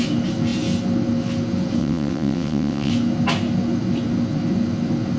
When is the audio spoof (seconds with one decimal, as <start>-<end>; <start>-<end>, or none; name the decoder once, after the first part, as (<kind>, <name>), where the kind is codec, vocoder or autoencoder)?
1.8-2.9 (vocoder, WaveNeXt)